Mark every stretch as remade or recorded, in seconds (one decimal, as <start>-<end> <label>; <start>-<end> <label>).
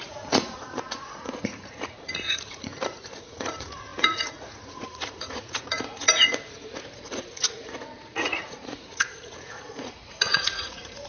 0.0-11.1 remade